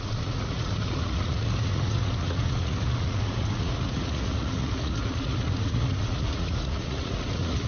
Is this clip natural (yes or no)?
no